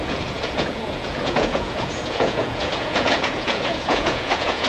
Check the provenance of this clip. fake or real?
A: fake